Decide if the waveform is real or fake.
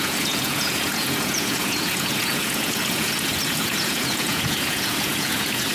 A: fake